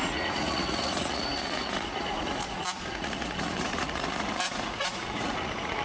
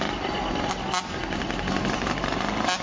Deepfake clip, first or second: first